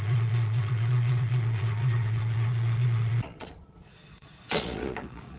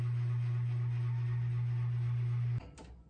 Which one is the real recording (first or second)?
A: second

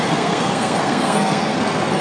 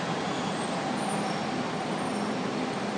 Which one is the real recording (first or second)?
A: second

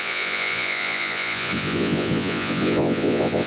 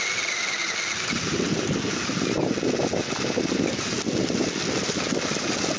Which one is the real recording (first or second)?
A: second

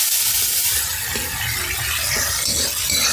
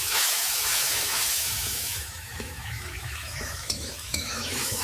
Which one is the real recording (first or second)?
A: first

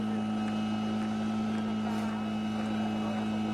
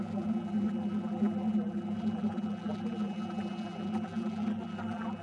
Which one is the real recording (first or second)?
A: first